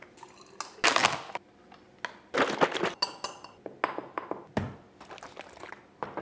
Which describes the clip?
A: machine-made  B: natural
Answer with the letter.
B